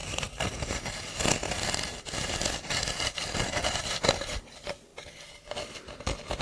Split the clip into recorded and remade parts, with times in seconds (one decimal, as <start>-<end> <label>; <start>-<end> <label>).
0.0-1.9 recorded; 1.9-3.8 remade; 3.8-6.4 recorded